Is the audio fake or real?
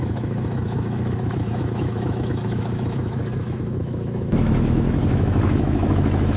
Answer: fake